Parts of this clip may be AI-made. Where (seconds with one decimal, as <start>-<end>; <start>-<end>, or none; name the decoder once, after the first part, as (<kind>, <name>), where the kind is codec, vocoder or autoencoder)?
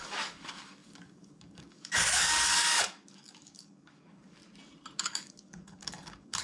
0.0-4.4 (codec, DAC); 5.0-6.4